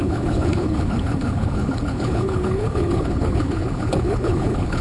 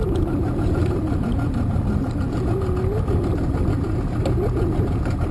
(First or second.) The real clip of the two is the second